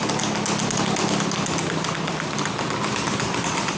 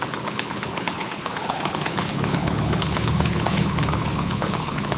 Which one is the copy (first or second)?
second